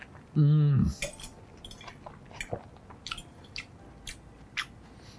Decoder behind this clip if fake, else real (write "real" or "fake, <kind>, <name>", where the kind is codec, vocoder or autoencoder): real